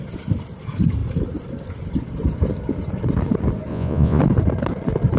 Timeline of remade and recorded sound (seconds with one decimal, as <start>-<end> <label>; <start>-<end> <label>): 0.0-3.7 recorded; 3.7-4.2 remade; 4.2-5.2 recorded